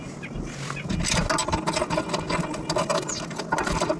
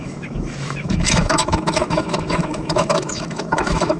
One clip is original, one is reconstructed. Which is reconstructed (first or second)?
second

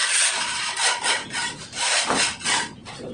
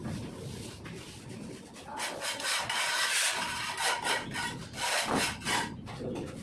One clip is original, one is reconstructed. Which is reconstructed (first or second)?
first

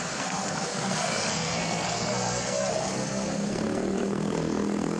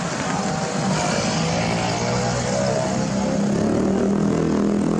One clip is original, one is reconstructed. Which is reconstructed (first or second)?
first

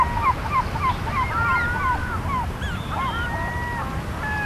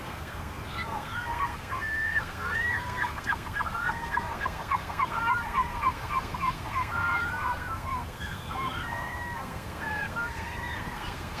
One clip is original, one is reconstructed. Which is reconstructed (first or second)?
second